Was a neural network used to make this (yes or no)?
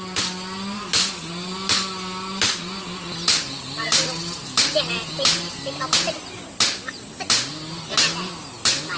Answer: no